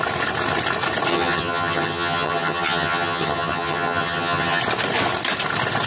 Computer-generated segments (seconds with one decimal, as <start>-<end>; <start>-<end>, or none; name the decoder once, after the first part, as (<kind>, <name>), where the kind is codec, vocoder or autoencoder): 1.1-4.6 (vocoder, HiFi-GAN)